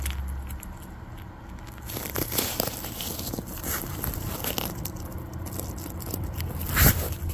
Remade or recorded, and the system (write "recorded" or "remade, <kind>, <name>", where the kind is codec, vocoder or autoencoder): recorded